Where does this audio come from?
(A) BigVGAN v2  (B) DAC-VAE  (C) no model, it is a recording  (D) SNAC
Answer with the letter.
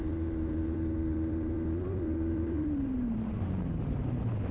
A